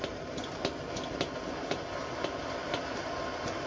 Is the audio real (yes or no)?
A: yes